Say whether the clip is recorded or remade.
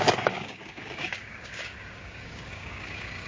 remade